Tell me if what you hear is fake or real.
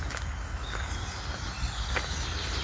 real